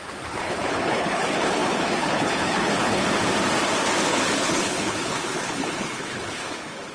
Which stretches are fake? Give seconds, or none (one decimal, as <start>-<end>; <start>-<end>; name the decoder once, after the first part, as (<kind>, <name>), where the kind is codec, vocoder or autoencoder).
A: 0.0-3.2 (codec, HILCodec); 4.1-6.9